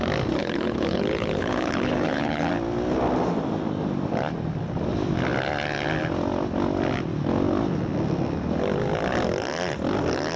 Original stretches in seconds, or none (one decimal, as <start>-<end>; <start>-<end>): 0.0-0.4; 2.5-10.4